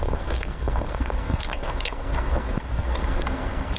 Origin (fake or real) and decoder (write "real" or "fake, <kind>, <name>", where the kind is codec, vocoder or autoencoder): fake, codec, SNAC